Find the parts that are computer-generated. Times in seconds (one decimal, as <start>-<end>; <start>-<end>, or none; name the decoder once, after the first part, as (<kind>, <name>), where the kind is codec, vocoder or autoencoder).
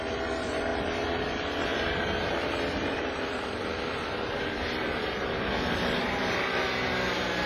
1.7-3.3 (vocoder, BigVGAN v2); 4.1-6.8